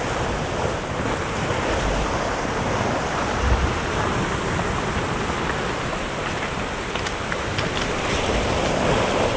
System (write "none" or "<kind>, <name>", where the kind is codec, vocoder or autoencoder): none